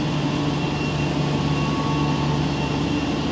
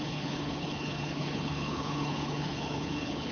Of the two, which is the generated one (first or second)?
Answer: second